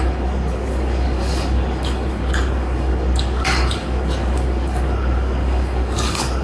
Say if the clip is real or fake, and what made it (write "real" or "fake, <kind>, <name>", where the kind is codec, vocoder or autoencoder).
fake, codec, DAC